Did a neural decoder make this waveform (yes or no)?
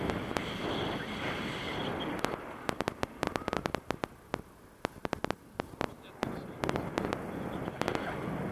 no